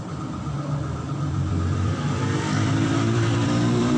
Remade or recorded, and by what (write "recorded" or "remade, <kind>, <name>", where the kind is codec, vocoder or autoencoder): remade, vocoder, BigVGAN v2